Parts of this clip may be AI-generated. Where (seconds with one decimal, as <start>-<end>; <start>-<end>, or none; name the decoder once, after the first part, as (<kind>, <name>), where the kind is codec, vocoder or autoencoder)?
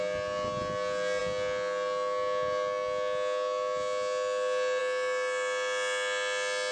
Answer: none